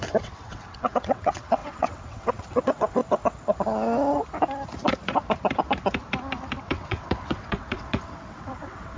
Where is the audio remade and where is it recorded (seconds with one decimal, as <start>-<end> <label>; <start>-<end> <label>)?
0.0-3.0 remade; 3.0-6.6 recorded; 6.6-9.0 remade